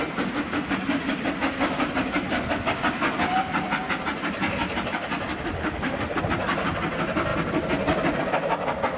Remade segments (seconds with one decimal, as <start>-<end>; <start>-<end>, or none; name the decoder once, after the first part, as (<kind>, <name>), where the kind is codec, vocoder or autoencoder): 5.6-6.2 (autoencoder, DAC-VAE)